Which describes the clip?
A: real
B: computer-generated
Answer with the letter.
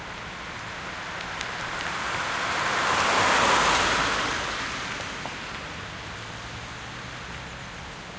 A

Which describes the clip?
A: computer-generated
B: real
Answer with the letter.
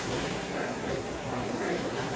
A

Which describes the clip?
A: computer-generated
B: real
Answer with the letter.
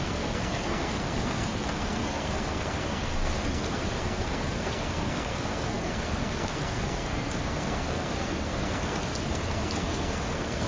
A